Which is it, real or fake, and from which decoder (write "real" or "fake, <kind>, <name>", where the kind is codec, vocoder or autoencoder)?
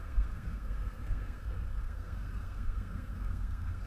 fake, codec, SNAC